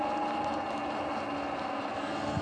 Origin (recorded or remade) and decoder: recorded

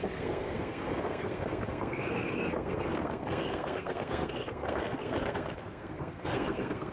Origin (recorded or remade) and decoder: remade, codec, SNAC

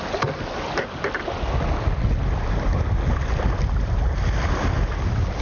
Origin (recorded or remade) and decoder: recorded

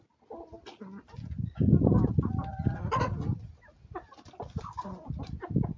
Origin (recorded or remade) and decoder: recorded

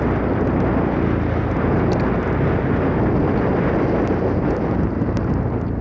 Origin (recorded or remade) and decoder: recorded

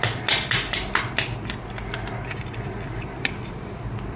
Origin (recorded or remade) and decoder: recorded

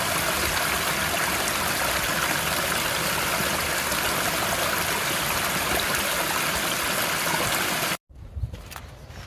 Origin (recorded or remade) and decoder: recorded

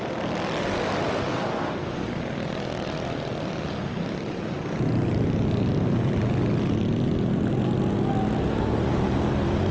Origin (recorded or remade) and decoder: recorded